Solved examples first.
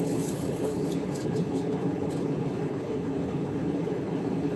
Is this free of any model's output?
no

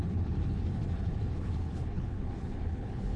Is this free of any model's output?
no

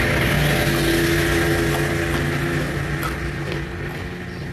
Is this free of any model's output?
yes